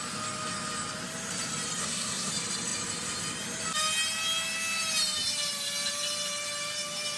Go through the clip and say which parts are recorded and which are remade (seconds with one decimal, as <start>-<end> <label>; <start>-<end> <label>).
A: 0.0-1.8 recorded; 1.8-2.3 remade; 2.3-7.2 recorded